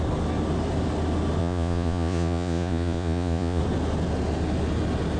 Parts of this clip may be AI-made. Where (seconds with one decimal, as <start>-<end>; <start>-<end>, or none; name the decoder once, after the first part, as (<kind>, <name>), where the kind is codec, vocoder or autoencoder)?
1.4-3.6 (vocoder, Vocos)